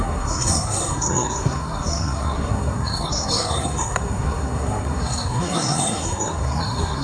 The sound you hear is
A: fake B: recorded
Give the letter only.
A